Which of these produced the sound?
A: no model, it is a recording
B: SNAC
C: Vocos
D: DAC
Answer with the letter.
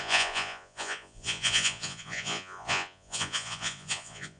C